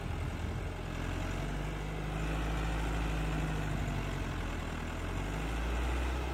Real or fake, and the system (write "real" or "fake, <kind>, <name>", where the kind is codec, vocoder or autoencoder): real